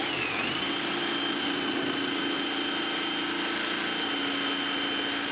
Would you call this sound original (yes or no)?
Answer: yes